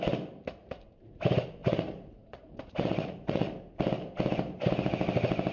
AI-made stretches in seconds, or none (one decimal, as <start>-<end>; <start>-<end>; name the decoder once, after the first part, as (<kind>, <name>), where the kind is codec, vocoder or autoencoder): 0.6-1.2 (vocoder, Vocos); 1.6-3.5